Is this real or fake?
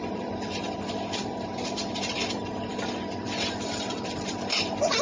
fake